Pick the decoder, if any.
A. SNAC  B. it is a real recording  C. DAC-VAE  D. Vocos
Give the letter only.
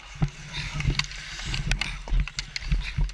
B